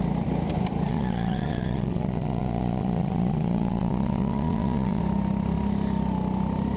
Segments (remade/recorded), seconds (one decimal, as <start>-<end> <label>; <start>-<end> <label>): 0.0-0.9 recorded; 0.9-5.0 remade; 5.0-6.8 recorded

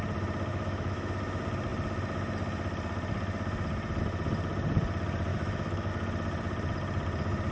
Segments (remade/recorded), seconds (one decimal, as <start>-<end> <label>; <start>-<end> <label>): 0.0-0.5 recorded; 0.5-1.1 remade; 1.1-5.3 recorded; 5.3-5.9 remade; 5.9-7.5 recorded

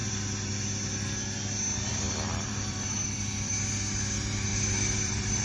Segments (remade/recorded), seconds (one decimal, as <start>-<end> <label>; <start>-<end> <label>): 0.0-0.5 remade; 0.5-1.9 recorded; 1.9-3.5 remade; 3.5-4.5 recorded; 4.5-5.4 remade

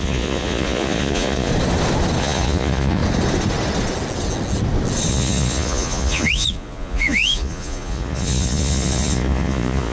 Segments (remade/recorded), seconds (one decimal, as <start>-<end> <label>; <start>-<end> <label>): 0.0-1.5 remade; 1.5-2.2 recorded; 2.2-3.0 remade; 3.0-5.1 recorded; 5.1-9.9 remade

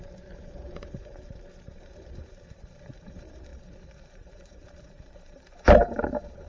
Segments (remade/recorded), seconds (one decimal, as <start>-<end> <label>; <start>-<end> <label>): 0.0-6.5 remade

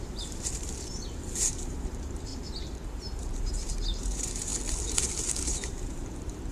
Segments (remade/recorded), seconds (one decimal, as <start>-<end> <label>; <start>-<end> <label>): 0.0-2.3 remade; 2.3-2.9 recorded; 2.9-4.5 remade; 4.5-5.4 recorded; 5.4-6.5 remade

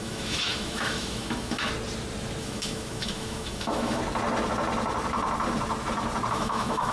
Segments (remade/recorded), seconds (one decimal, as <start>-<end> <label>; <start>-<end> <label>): 0.0-1.7 remade; 1.7-2.4 recorded; 2.4-4.0 remade; 4.0-6.3 recorded; 6.3-6.9 remade

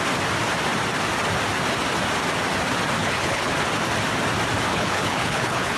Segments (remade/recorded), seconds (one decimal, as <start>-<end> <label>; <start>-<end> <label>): 0.0-3.0 recorded; 3.0-3.5 remade; 3.5-4.7 recorded; 4.7-5.8 remade